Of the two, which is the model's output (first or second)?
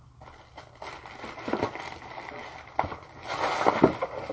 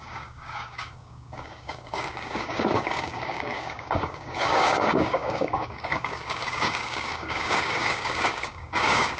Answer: second